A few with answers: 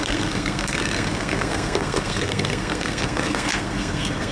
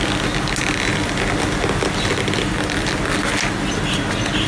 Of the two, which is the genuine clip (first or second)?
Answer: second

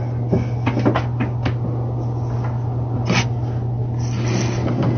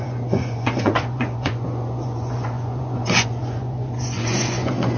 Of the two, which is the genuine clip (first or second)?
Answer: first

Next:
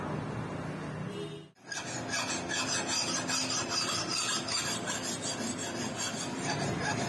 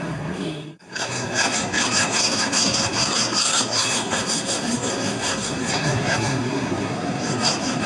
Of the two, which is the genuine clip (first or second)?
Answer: first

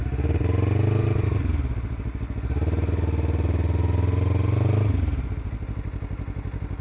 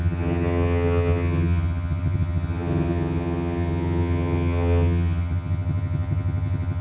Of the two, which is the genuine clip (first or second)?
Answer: first